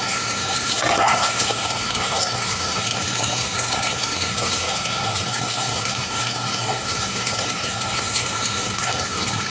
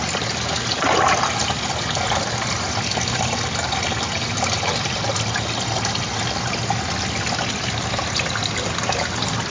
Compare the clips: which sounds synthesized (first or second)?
first